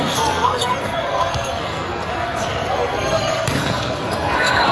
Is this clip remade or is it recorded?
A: remade